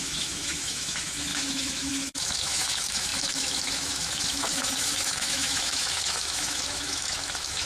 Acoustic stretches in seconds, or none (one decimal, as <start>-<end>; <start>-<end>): none